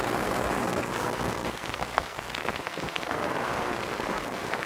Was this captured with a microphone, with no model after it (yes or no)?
no